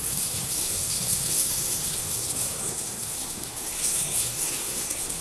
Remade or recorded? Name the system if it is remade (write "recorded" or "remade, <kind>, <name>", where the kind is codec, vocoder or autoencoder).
remade, codec, SNAC